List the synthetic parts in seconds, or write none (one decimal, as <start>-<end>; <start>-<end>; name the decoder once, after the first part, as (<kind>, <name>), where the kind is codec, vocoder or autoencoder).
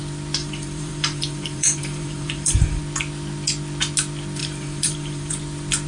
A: 0.4-2.8 (vocoder, BigVGAN v2); 4.4-5.4